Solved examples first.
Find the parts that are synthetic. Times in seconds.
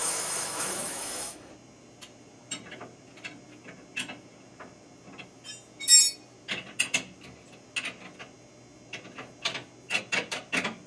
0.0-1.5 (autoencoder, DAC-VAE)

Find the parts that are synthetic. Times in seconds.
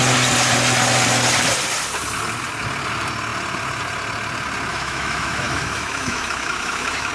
4.7-7.1 (autoencoder, DAC-VAE)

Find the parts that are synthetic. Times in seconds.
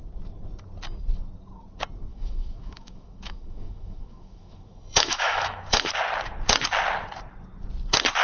2.1-5.9 (autoencoder, DAC-VAE)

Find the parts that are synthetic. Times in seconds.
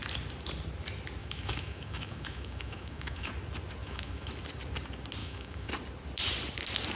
1.2-3.3 (autoencoder, DAC-VAE); 3.8-4.3; 5.2-5.7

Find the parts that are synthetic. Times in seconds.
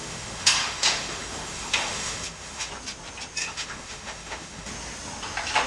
0.0-2.7 (autoencoder, DAC-VAE); 3.4-4.7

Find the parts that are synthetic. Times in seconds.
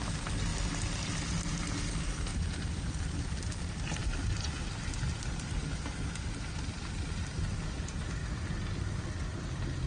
none